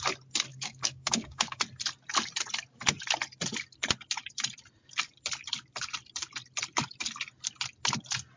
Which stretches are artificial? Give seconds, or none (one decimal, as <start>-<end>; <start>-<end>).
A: 0.5-1.6